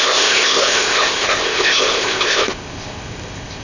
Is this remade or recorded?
remade